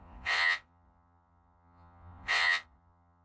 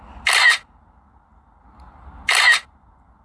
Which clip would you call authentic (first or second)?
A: second